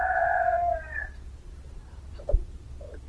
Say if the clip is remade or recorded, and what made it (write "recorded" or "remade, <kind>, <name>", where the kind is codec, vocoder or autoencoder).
recorded